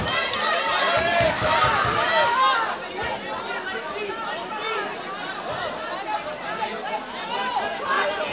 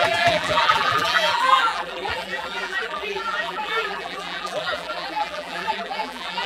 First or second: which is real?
first